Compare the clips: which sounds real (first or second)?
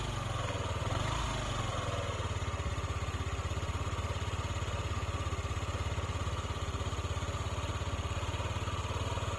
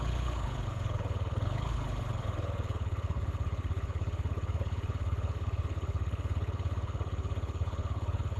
first